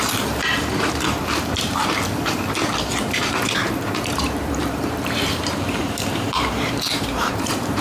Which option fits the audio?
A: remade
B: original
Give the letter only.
A